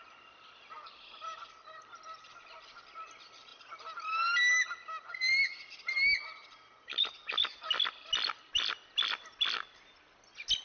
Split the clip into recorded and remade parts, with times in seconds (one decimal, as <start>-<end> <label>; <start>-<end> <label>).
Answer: 0.0-10.6 recorded